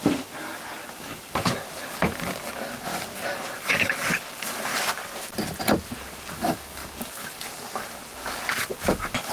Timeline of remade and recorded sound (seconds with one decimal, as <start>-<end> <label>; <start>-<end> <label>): 0.0-4.7 remade; 4.7-6.0 recorded; 6.0-9.3 remade